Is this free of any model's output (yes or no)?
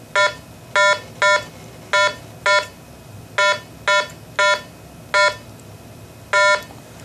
yes